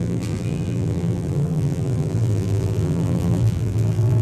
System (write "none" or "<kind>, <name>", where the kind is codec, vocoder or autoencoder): vocoder, BigVGAN v2